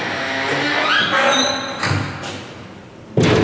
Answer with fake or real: real